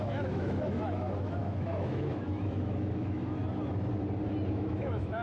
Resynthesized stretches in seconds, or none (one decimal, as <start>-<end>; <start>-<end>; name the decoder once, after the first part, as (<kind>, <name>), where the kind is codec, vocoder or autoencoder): 0.0-3.4 (autoencoder, DAC-VAE); 4.5-5.2